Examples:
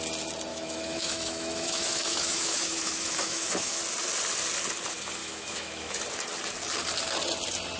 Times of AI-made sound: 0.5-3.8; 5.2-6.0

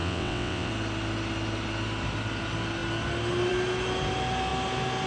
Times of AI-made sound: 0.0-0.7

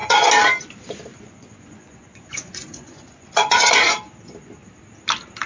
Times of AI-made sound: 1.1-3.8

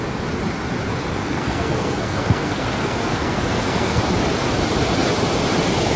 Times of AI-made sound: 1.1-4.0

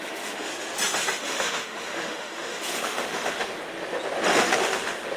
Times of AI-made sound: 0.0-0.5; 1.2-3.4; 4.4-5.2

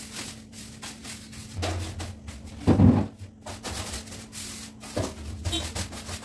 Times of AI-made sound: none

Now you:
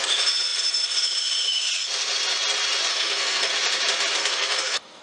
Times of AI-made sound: 2.9-3.5; 4.2-5.0

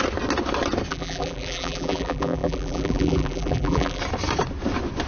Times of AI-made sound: 0.9-4.0